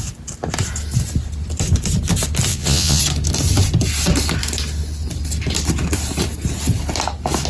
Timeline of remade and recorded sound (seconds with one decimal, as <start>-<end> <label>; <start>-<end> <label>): 0.0-2.5 recorded; 2.5-3.0 remade; 3.0-7.5 recorded